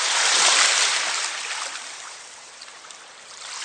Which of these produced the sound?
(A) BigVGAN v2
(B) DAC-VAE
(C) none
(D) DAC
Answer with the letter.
C